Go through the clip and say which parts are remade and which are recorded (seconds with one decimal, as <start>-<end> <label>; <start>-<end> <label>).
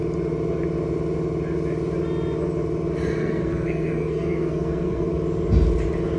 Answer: 0.0-3.2 recorded; 3.2-5.1 remade; 5.1-6.2 recorded